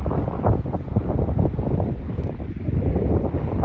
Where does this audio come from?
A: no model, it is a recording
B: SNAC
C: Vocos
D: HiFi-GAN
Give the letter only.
A